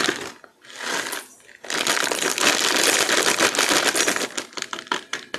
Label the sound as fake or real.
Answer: real